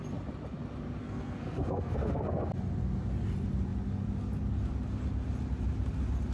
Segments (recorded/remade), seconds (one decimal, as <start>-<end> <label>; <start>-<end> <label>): 0.0-1.0 recorded; 1.0-2.5 remade; 2.5-6.3 recorded